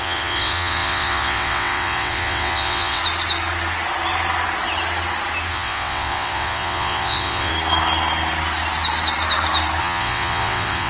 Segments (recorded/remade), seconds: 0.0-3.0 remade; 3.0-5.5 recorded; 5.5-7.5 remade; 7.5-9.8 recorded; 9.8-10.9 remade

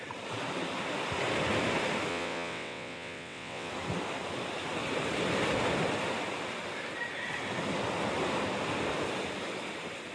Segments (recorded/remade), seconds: 0.0-2.1 recorded; 2.1-3.7 remade; 3.7-10.1 recorded

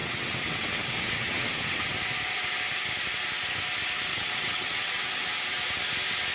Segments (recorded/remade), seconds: 0.0-1.9 remade; 1.9-4.1 recorded; 4.1-5.2 remade; 5.2-6.3 recorded

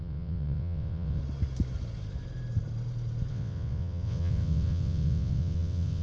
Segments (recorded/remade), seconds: 0.0-1.2 remade; 1.2-3.3 recorded; 3.3-6.0 remade

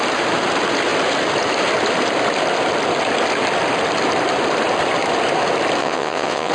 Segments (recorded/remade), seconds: 0.0-5.8 recorded; 5.8-6.5 remade

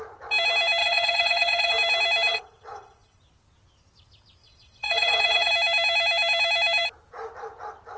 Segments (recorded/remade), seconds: 0.0-0.8 recorded; 0.8-1.7 remade; 1.7-2.3 recorded; 2.3-3.2 remade; 3.2-4.4 recorded; 4.4-5.5 remade; 5.5-8.0 recorded